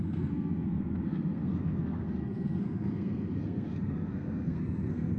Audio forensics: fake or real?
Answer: fake